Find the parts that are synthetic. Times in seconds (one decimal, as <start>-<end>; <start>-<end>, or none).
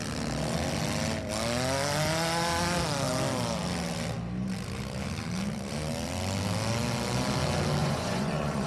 7.8-8.7